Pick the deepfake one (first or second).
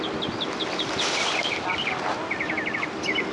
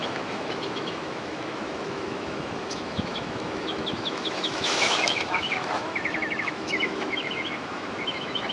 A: second